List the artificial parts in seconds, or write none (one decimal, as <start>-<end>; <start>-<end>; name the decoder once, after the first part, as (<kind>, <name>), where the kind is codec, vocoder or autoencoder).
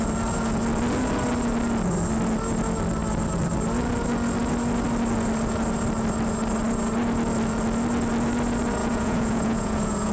8.8-10.1 (vocoder, Vocos)